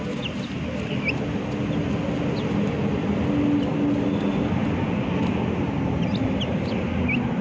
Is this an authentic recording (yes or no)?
yes